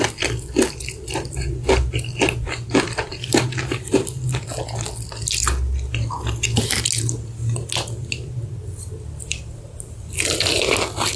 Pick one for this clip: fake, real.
real